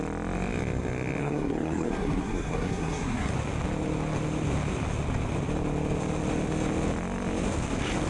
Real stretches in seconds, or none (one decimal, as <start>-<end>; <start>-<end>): 0.0-1.2; 3.3-8.1